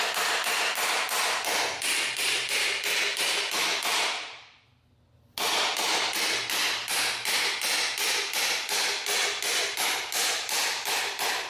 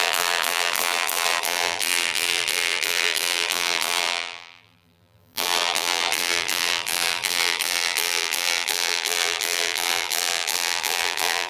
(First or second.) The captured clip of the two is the first